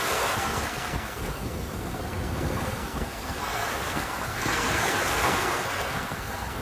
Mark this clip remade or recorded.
remade